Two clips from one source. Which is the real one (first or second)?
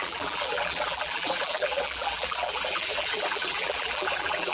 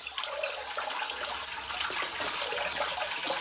second